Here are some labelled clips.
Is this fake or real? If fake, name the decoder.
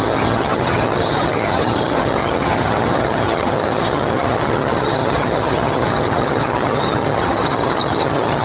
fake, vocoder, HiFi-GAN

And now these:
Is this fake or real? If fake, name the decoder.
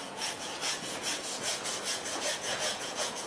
fake, vocoder, Vocos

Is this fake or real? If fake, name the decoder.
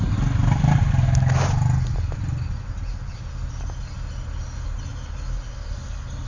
real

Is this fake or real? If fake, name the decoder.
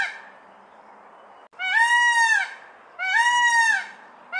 real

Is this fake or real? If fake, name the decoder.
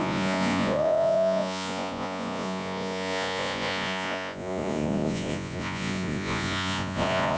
fake, vocoder, Vocos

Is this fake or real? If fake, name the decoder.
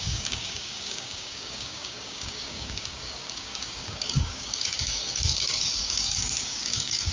fake, codec, DAC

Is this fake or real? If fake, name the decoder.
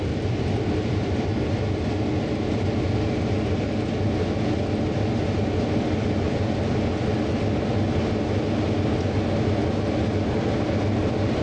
real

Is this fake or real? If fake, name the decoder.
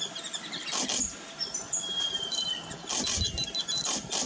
real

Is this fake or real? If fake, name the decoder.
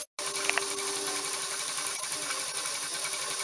real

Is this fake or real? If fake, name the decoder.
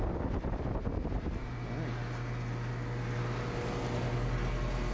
real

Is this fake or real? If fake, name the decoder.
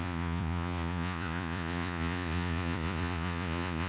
fake, vocoder, Vocos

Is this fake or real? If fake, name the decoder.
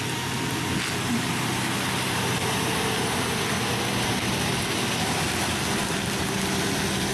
real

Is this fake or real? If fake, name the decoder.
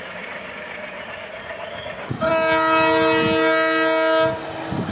real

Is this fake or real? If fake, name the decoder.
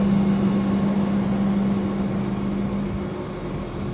real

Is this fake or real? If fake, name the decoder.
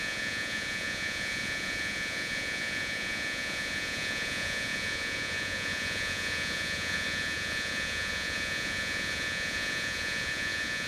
fake, vocoder, Vocos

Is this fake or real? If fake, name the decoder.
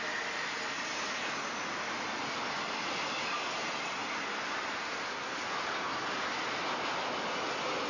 real